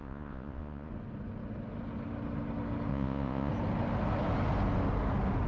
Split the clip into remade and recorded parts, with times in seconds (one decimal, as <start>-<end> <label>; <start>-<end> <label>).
0.0-0.9 remade; 0.9-2.9 recorded; 2.9-3.5 remade; 3.5-5.5 recorded